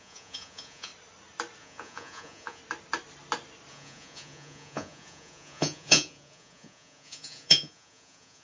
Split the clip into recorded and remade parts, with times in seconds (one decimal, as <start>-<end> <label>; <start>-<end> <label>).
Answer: 0.0-0.9 remade; 0.9-1.6 recorded; 1.6-2.6 remade; 2.6-3.7 recorded; 3.7-8.4 remade